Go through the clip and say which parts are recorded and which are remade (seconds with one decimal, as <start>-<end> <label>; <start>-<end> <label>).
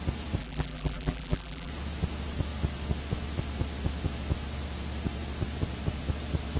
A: 0.0-0.4 recorded; 0.4-1.7 remade; 1.7-6.6 recorded